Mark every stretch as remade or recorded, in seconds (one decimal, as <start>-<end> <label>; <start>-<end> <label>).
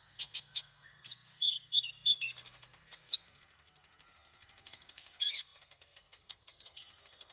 0.0-7.3 remade